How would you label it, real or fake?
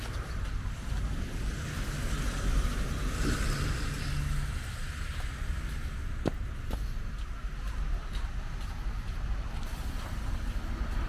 real